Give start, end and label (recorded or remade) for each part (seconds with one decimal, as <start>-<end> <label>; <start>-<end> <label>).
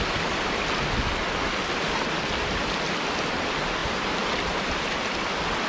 0.0-3.8 recorded; 3.8-4.7 remade; 4.7-5.7 recorded